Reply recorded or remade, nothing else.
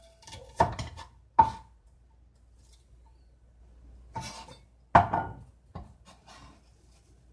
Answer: recorded